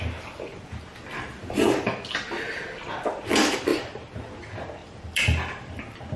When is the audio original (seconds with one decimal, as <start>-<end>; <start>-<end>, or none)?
0.0-3.7; 4.3-4.8; 5.8-6.2